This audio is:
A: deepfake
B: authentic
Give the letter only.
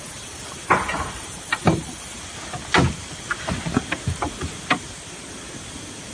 B